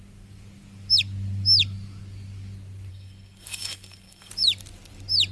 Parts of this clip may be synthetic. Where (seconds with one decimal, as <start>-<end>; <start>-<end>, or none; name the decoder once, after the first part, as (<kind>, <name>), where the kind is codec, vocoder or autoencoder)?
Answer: 2.9-4.3 (codec, SNAC)